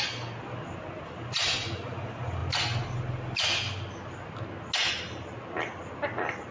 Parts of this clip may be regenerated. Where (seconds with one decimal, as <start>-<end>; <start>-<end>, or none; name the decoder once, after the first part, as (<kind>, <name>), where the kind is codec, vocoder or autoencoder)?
none